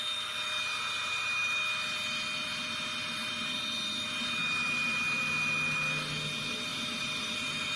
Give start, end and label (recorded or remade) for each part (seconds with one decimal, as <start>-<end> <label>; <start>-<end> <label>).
0.0-6.7 recorded; 6.7-7.8 remade